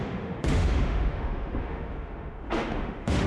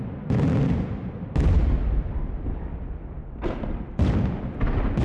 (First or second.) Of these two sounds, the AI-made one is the first